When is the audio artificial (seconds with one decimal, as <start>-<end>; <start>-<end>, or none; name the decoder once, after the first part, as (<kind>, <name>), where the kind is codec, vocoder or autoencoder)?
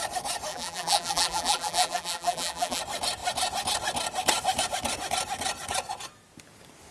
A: 0.5-2.8 (vocoder, BigVGAN v2)